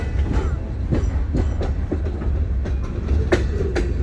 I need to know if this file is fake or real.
real